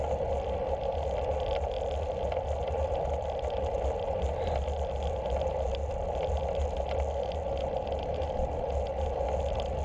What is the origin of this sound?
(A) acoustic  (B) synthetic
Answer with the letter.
A